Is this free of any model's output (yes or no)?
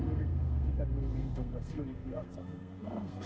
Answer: no